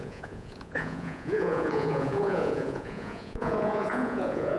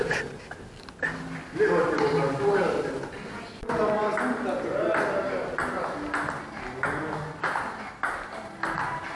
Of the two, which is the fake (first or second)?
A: first